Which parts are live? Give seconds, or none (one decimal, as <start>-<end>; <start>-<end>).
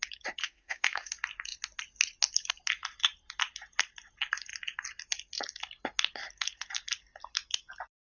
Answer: 0.0-0.4; 1.1-8.1